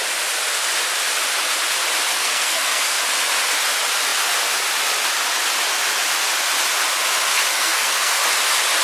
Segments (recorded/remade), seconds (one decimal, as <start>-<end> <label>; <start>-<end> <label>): 0.0-2.1 recorded; 2.1-3.0 remade; 3.0-7.5 recorded; 7.5-8.2 remade; 8.2-8.8 recorded